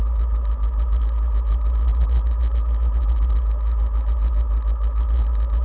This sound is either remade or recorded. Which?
recorded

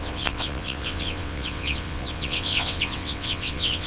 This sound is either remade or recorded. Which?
remade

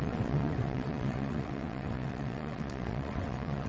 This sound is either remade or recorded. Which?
remade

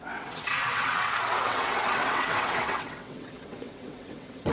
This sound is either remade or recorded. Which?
remade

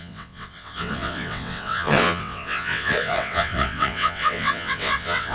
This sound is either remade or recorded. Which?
remade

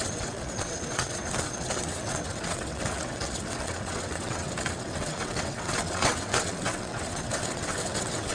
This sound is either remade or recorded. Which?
remade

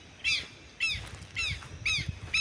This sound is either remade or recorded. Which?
recorded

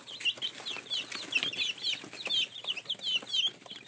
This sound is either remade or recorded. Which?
recorded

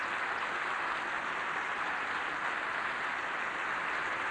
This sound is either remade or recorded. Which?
recorded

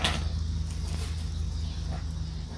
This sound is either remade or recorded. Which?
recorded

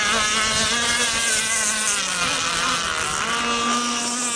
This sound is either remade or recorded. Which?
recorded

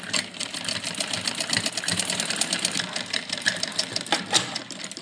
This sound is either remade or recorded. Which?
recorded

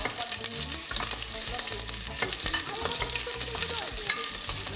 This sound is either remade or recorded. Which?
recorded